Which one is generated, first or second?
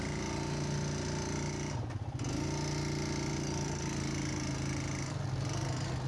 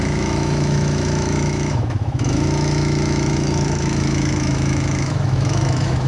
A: second